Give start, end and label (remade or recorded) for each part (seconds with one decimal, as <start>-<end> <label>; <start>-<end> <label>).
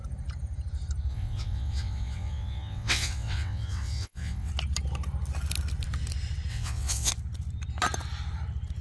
0.0-1.1 recorded; 1.1-4.5 remade; 4.5-6.5 recorded; 6.5-7.1 remade; 7.1-8.8 recorded